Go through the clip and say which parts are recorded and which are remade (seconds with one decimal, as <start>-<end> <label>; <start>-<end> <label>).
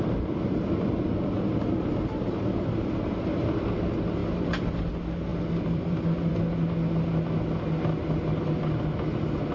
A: 0.0-4.2 recorded; 4.2-4.8 remade; 4.8-5.3 recorded; 5.3-6.3 remade; 6.3-9.5 recorded